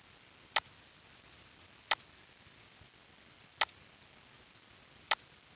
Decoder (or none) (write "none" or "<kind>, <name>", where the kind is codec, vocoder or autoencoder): none